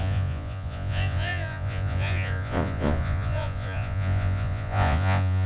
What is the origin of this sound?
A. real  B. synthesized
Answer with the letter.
B